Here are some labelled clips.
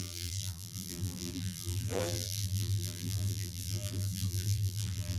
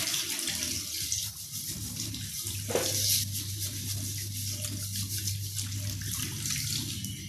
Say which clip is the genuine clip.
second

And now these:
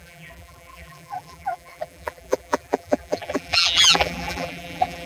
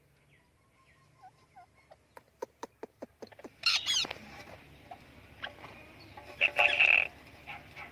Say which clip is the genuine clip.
second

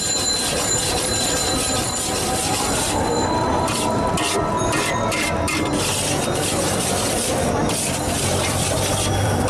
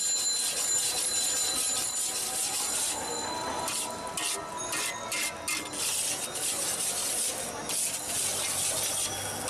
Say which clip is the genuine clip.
second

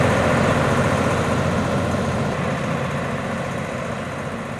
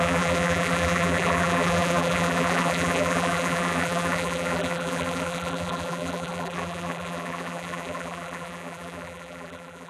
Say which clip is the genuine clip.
first